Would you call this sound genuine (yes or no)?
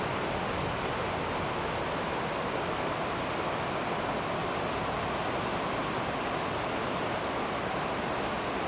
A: yes